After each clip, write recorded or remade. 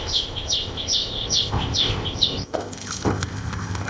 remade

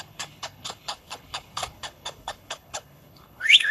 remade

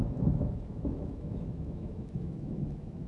remade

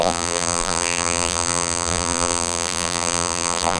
remade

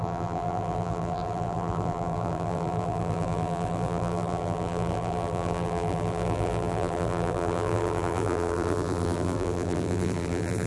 remade